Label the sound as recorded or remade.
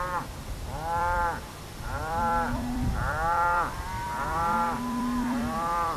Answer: remade